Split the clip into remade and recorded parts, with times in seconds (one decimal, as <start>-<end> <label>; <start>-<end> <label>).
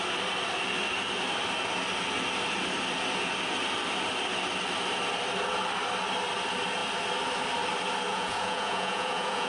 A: 0.0-8.1 recorded; 8.1-9.5 remade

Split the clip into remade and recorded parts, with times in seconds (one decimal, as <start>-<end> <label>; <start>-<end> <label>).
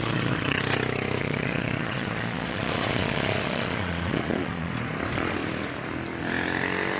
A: 0.0-0.6 remade; 0.6-1.2 recorded; 1.2-4.7 remade; 4.7-7.0 recorded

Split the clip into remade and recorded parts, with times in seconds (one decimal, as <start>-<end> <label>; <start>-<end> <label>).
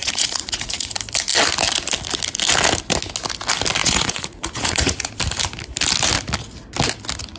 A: 0.0-0.9 remade; 0.9-3.8 recorded; 3.8-5.1 remade; 5.1-7.4 recorded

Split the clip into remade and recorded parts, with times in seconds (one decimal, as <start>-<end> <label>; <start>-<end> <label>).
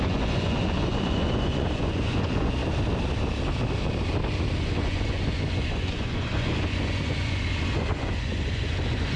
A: 0.0-2.6 remade; 2.6-4.6 recorded; 4.6-9.2 remade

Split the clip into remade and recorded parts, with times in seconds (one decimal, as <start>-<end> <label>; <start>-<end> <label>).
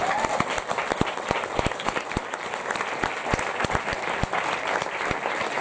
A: 0.0-5.6 recorded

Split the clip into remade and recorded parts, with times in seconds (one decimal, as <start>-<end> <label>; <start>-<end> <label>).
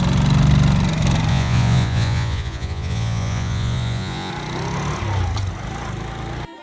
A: 0.0-1.3 recorded; 1.3-4.3 remade; 4.3-6.6 recorded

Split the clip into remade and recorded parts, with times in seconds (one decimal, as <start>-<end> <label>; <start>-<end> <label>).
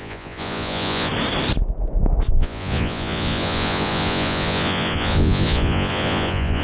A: 0.0-1.1 remade; 1.1-2.3 recorded; 2.3-6.6 remade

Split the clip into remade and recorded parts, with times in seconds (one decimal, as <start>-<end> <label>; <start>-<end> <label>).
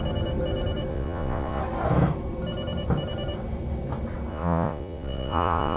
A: 0.0-0.9 recorded; 0.9-1.6 remade; 1.6-4.3 recorded; 4.3-5.8 remade